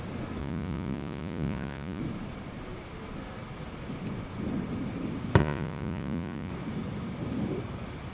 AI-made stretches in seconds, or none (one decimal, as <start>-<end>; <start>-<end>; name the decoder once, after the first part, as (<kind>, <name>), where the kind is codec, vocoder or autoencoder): 0.4-2.0 (vocoder, Vocos); 5.4-6.5